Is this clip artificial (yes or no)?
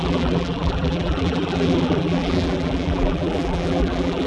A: yes